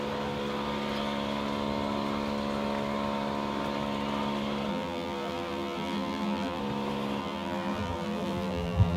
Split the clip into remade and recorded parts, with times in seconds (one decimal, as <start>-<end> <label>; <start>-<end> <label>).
0.0-4.7 recorded; 4.7-6.6 remade; 6.6-7.2 recorded; 7.2-9.0 remade